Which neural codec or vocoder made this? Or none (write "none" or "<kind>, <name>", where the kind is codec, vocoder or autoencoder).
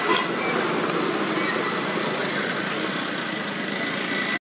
none